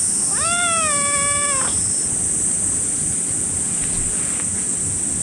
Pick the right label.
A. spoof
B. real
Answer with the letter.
B